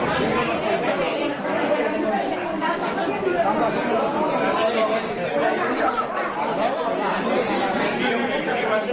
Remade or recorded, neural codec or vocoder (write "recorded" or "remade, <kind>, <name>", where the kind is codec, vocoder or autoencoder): recorded